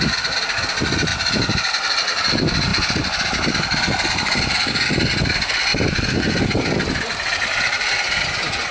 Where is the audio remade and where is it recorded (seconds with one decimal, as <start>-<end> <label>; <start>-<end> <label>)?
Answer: 0.0-2.7 recorded; 2.7-4.4 remade; 4.4-5.7 recorded; 5.7-8.2 remade; 8.2-8.7 recorded